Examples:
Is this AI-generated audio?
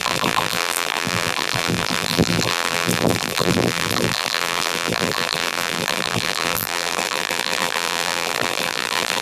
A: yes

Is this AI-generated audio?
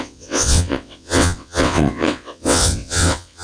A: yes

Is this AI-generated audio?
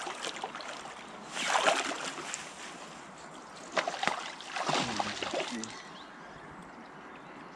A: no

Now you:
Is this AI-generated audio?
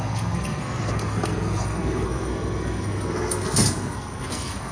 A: yes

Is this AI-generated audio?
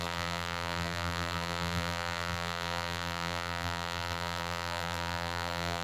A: yes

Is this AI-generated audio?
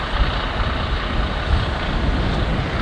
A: no